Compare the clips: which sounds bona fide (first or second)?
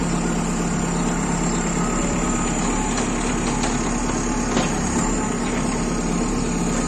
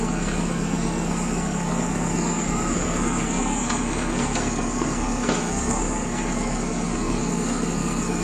first